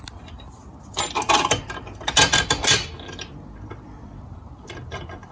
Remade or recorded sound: recorded